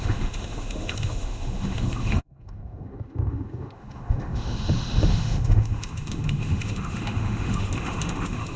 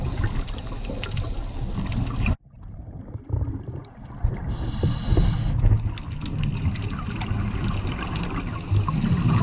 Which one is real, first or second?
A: second